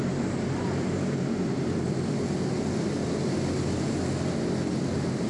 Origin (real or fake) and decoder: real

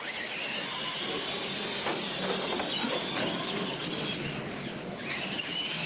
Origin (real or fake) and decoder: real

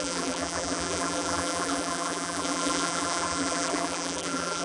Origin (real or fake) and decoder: fake, vocoder, BigVGAN v2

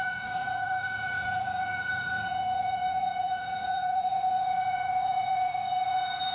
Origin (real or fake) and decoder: fake, vocoder, Vocos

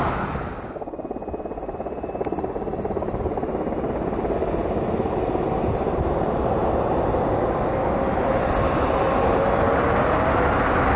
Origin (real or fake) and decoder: real